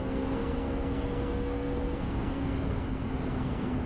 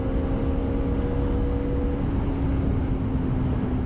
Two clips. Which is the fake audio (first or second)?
first